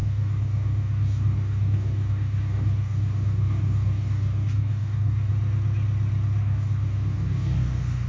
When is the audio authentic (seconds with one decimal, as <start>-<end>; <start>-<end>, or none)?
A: 5.3-6.4